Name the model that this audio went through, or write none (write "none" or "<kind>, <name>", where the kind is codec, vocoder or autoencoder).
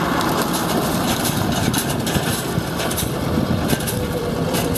vocoder, BigVGAN v2